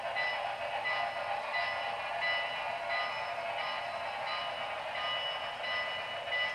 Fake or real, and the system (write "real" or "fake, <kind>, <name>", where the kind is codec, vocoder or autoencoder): real